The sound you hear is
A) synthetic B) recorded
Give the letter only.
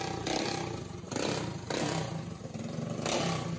B